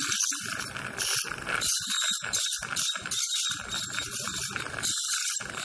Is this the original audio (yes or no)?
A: no